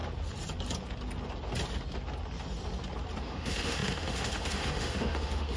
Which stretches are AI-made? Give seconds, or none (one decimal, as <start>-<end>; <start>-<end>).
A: 3.2-5.6